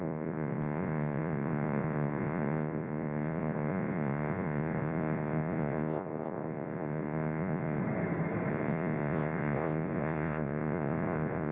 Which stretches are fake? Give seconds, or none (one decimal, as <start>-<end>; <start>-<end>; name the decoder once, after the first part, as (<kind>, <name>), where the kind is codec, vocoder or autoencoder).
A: 0.0-7.8 (vocoder, Vocos); 8.5-11.5